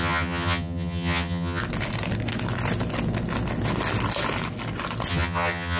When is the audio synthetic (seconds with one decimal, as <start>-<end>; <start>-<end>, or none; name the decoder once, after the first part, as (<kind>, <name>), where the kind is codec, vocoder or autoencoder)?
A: 0.0-1.6 (vocoder, HiFi-GAN); 5.1-5.8

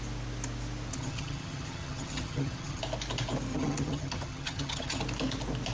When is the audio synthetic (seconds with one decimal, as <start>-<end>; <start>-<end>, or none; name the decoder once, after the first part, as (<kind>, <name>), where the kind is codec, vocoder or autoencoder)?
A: 0.9-2.8 (vocoder, HiFi-GAN); 3.5-5.0

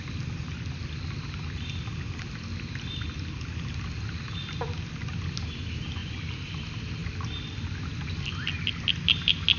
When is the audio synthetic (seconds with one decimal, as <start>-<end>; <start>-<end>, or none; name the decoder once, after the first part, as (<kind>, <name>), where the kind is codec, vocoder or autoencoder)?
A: none

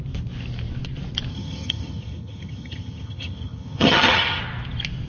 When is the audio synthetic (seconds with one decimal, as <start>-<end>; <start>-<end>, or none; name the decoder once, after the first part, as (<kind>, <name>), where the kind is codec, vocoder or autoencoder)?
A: 1.3-4.4 (vocoder, HiFi-GAN)

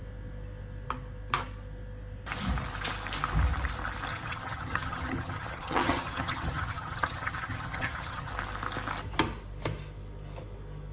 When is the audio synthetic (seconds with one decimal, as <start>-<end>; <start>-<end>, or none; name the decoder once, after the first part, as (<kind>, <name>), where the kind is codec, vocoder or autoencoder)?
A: 4.1-8.3 (vocoder, HiFi-GAN)